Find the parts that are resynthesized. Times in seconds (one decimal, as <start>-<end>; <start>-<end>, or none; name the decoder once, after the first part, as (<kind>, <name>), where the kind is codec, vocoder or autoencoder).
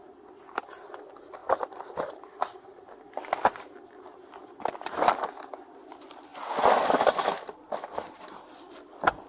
0.0-0.6 (vocoder, BigVGAN v2); 1.4-4.0